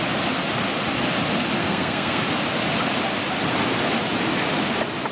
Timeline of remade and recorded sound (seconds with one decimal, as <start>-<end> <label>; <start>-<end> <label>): 0.0-1.6 recorded; 1.6-2.2 remade; 2.2-5.1 recorded